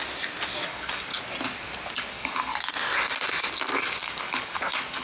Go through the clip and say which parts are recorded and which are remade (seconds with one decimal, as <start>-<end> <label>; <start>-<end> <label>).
0.0-0.6 recorded; 0.6-1.1 remade; 1.1-2.1 recorded; 2.1-2.5 remade; 2.5-4.0 recorded; 4.0-5.0 remade